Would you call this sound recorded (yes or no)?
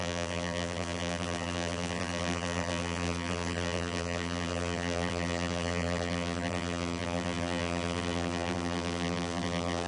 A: no